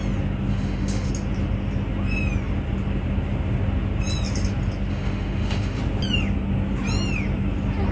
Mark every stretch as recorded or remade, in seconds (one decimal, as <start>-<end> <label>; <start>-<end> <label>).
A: 0.0-0.5 recorded; 0.5-1.1 remade; 1.1-4.9 recorded; 4.9-5.8 remade; 5.8-7.9 recorded